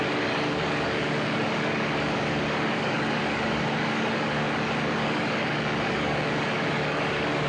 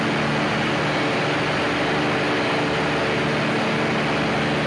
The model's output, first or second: first